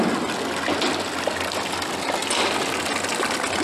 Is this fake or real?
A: real